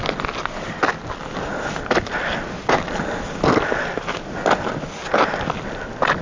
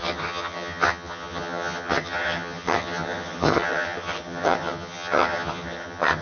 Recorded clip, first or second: first